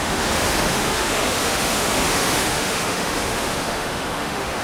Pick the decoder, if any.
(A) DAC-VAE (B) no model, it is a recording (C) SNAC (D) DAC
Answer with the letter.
A